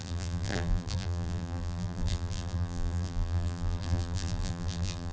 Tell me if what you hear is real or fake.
fake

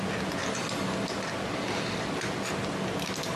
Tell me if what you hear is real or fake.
real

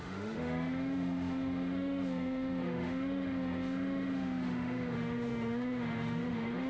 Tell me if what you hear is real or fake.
fake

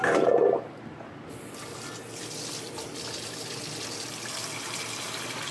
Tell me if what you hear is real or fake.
real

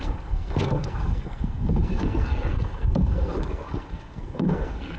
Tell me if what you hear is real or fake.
fake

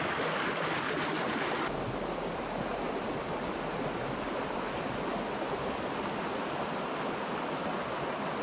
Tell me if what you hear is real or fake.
real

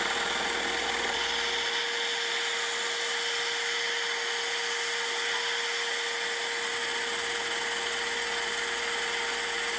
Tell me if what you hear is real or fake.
real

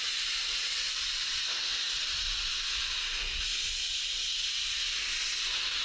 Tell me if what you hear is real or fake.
real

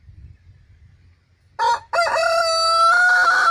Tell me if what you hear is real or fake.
real